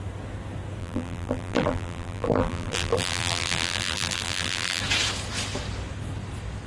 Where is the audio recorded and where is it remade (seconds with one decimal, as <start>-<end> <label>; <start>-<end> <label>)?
0.0-0.8 recorded; 0.8-4.8 remade; 4.8-6.7 recorded